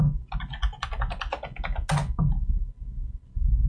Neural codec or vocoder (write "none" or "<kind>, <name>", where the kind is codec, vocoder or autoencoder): none